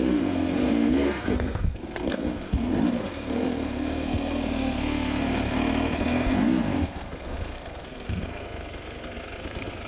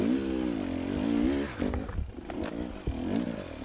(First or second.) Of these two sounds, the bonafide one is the second